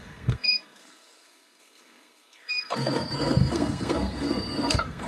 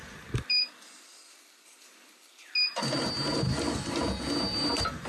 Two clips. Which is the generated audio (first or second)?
first